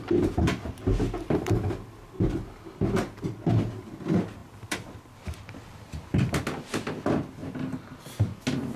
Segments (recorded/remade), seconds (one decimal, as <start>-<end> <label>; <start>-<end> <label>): 0.0-4.4 recorded; 4.4-5.0 remade; 5.0-7.4 recorded; 7.4-8.0 remade; 8.0-8.8 recorded